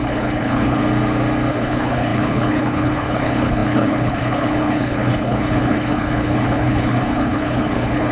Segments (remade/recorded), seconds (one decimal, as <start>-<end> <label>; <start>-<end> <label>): 0.0-0.8 remade; 0.8-1.5 recorded; 1.5-8.1 remade